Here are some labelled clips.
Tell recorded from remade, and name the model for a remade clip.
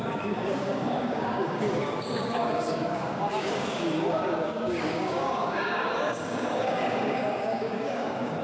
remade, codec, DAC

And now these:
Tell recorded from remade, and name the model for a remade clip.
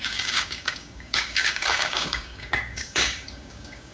remade, codec, DAC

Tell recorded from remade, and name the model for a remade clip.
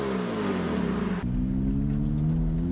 recorded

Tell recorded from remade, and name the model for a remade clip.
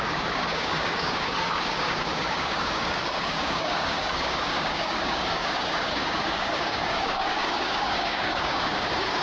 remade, codec, DAC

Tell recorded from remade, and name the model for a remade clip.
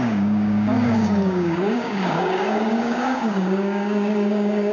remade, codec, DAC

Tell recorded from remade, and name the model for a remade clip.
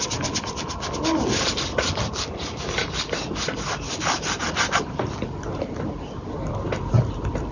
recorded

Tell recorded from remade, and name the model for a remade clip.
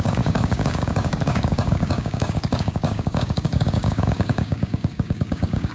remade, codec, DAC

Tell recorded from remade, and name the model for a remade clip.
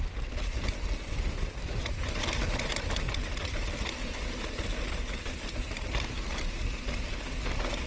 recorded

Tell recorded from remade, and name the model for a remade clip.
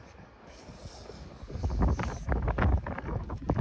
remade, codec, DAC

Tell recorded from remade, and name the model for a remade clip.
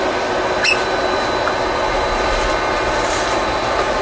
recorded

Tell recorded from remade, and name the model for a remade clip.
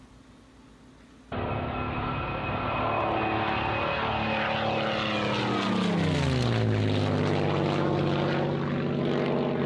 recorded